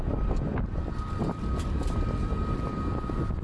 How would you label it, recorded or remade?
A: recorded